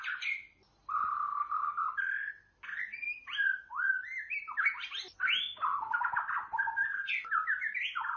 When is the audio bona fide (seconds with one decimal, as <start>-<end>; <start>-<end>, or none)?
0.0-1.3; 2.3-8.2